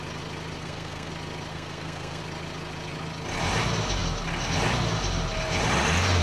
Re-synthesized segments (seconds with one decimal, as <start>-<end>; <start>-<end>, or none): 0.6-1.1; 1.5-2.2

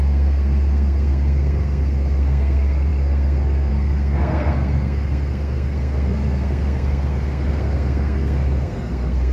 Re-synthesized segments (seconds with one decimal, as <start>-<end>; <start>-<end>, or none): 0.0-9.3

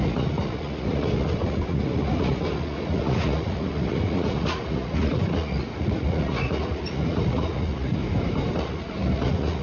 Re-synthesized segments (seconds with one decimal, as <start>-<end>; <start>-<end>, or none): 0.0-8.0; 8.5-9.6

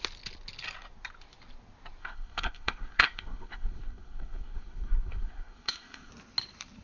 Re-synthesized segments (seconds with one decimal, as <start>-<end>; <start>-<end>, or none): 2.0-6.1

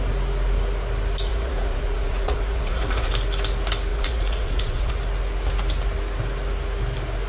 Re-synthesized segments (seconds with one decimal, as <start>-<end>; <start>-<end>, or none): 1.3-3.1; 3.9-4.9

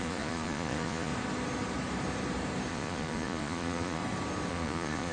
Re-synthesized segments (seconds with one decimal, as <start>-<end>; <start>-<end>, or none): 0.0-1.1; 2.7-4.0; 4.5-5.1

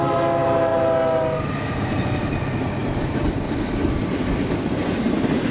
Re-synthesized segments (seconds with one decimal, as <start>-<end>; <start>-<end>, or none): 2.8-4.0